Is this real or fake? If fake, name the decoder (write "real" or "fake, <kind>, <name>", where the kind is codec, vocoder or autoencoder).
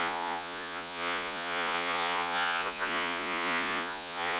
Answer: fake, vocoder, Vocos